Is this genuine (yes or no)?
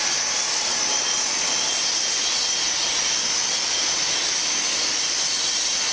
yes